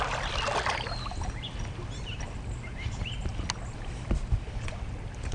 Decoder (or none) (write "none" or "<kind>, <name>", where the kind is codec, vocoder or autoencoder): none